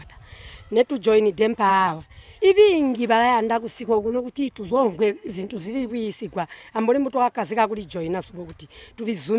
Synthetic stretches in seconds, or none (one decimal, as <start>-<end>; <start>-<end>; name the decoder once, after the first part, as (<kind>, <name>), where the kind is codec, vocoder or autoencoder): 1.7-2.4 (codec, SNAC); 3.7-5.9